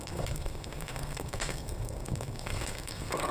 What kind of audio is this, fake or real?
fake